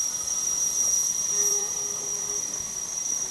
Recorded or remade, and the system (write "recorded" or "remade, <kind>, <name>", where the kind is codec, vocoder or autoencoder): remade, vocoder, BigVGAN v2